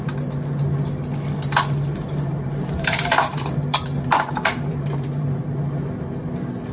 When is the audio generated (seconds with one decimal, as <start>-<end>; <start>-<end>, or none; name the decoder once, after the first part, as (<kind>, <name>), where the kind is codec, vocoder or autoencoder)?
1.9-5.4 (vocoder, BigVGAN v2)